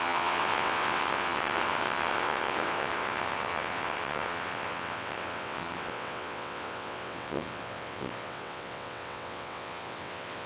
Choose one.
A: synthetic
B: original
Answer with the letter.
A